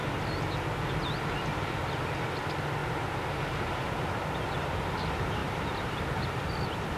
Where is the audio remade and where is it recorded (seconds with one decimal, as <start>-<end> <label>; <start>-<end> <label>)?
0.0-2.8 recorded; 2.8-3.9 remade; 3.9-5.4 recorded; 5.4-6.0 remade; 6.0-7.0 recorded

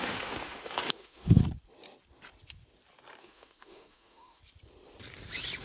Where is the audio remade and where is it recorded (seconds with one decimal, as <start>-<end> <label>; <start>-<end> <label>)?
0.0-1.4 remade; 1.4-3.2 recorded; 3.2-4.4 remade; 4.4-5.6 recorded

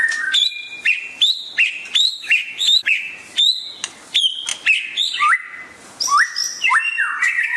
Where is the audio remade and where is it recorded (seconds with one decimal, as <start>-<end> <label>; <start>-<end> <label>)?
0.0-2.1 recorded; 2.1-3.1 remade; 3.1-7.6 recorded

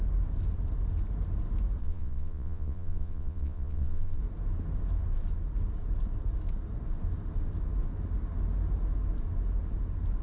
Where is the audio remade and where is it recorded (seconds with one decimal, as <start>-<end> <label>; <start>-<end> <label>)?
0.0-1.8 recorded; 1.8-4.2 remade; 4.2-10.2 recorded

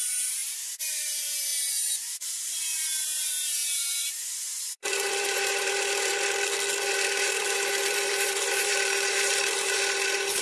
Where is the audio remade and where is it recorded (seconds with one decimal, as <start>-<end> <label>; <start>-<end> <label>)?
0.0-0.4 remade; 0.4-0.9 recorded; 0.9-6.1 remade; 6.1-6.9 recorded; 6.9-10.4 remade

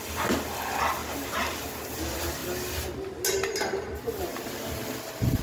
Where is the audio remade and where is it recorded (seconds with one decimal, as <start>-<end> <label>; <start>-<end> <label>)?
0.0-1.0 recorded; 1.0-1.9 remade; 1.9-4.3 recorded; 4.3-4.9 remade; 4.9-5.4 recorded

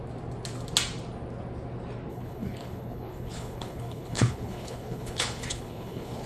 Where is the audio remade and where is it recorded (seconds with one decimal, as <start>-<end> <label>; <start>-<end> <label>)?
0.0-2.1 recorded; 2.1-6.3 remade